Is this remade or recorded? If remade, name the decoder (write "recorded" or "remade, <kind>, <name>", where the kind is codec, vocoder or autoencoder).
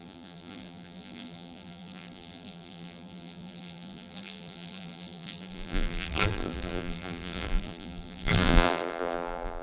remade, vocoder, BigVGAN v2